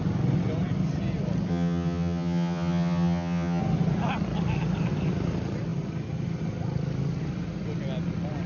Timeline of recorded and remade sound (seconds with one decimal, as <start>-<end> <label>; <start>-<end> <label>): 0.0-1.5 recorded; 1.5-3.6 remade; 3.6-8.5 recorded